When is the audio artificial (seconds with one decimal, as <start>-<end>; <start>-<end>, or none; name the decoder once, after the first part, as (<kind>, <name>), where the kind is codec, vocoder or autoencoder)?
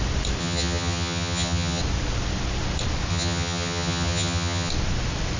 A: 0.4-1.8 (vocoder, HiFi-GAN); 3.1-4.7